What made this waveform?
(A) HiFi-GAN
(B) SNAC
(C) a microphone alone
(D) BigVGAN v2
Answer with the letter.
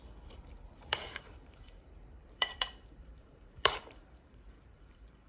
D